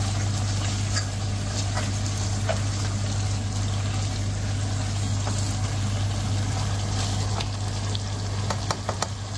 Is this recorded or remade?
recorded